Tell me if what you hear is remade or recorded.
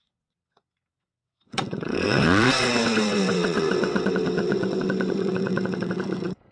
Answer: remade